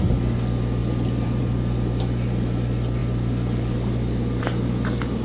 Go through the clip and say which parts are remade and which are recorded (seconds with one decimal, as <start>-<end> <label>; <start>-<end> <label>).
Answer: 0.0-5.2 recorded